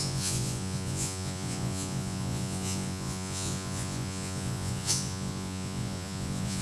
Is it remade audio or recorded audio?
remade